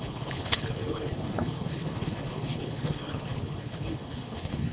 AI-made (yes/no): yes